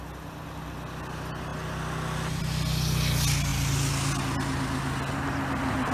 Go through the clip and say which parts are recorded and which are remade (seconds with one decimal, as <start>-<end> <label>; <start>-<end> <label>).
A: 0.0-5.9 recorded